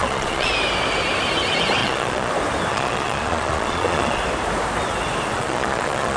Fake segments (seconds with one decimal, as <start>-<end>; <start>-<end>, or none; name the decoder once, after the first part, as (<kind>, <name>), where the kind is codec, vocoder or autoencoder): 0.0-0.5 (vocoder, Vocos); 1.8-2.3; 2.7-4.2; 5.3-6.2